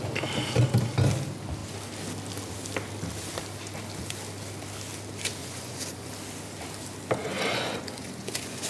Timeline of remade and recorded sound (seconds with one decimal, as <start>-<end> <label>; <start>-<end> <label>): 0.0-5.4 recorded; 5.4-6.1 remade; 6.1-7.2 recorded; 7.2-8.7 remade